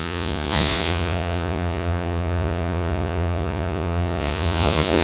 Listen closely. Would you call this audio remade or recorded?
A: remade